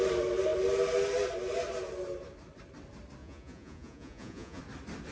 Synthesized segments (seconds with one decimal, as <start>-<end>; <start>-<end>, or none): 3.2-4.6